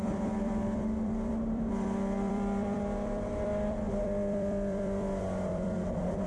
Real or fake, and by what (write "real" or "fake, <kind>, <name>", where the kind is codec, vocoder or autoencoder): fake, vocoder, BigVGAN v2